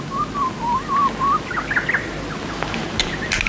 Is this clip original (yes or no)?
yes